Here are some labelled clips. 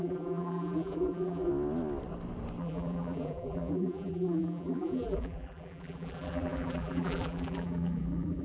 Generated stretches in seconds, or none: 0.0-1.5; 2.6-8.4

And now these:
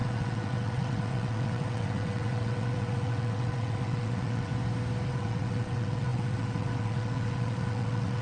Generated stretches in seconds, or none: 0.0-4.5; 5.1-8.2

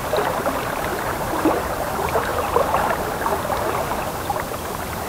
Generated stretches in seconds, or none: 0.9-1.9